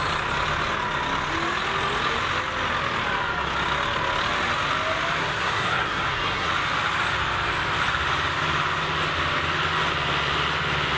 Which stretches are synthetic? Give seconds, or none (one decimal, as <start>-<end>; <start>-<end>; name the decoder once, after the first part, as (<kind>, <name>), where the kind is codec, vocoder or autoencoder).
5.2-6.5 (codec, SNAC)